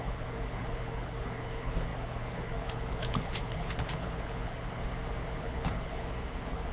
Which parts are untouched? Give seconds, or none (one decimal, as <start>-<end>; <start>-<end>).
4.8-5.4